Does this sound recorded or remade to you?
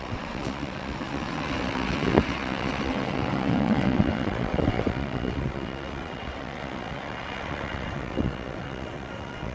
remade